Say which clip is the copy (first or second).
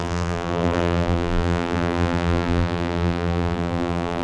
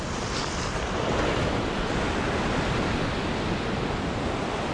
first